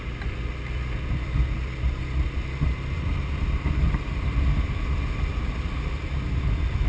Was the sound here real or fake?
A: real